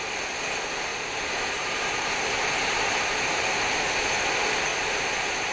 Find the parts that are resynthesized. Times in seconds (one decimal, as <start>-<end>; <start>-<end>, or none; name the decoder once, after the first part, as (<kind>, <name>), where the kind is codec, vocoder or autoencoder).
0.9-4.2 (vocoder, BigVGAN v2); 4.7-5.5